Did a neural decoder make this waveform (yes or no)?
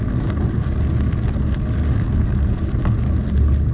no